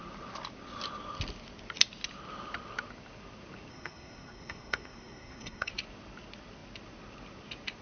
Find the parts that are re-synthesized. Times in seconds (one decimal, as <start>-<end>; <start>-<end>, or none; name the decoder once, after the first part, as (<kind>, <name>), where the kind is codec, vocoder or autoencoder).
3.7-5.7 (codec, SNAC)